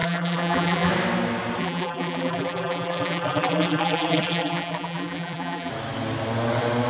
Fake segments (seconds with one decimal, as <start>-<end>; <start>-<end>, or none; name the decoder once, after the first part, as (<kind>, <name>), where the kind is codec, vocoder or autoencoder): 0.0-0.9 (vocoder, BigVGAN v2); 1.6-5.7